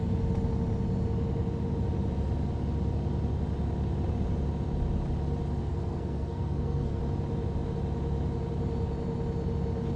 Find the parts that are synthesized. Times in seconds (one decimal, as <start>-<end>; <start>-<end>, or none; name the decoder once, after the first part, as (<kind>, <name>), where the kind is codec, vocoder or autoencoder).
5.6-7.0 (codec, SNAC)